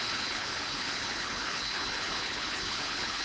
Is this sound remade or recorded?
remade